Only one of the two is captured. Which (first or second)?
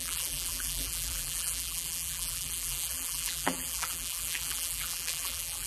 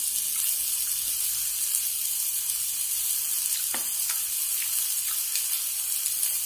second